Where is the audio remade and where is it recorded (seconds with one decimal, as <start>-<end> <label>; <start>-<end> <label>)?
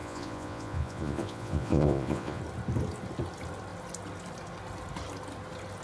0.0-2.4 remade; 2.4-5.8 recorded